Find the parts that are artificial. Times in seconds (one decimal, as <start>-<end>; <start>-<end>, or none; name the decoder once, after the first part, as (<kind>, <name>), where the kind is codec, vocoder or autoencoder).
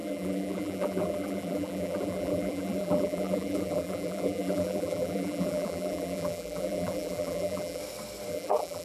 0.0-7.8 (vocoder, BigVGAN v2); 8.3-8.8